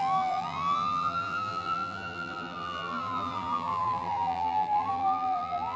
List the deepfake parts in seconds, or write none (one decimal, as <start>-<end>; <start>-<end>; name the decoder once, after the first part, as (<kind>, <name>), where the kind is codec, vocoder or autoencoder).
0.0-5.8 (vocoder, BigVGAN v2)